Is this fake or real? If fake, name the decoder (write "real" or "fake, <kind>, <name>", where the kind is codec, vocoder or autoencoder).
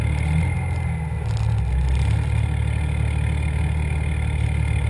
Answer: real